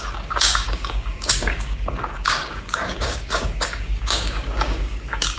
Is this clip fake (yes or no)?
yes